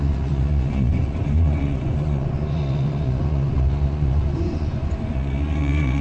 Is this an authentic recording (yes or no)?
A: no